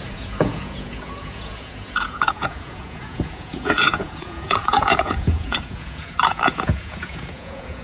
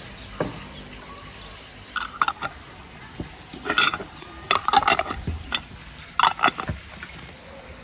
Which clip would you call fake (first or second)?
first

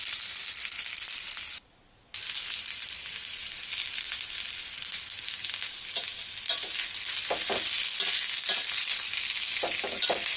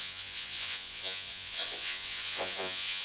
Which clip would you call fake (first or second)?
second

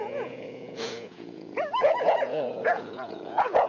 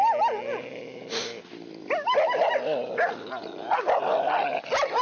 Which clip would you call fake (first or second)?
first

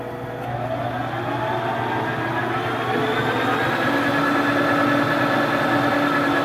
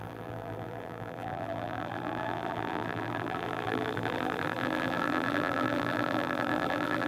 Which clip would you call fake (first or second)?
second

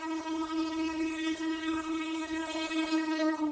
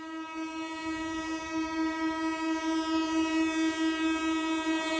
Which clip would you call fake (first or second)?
first